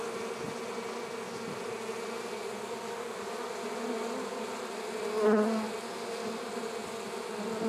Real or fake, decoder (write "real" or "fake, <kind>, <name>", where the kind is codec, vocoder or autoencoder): real